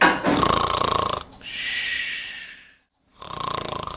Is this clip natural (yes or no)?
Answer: yes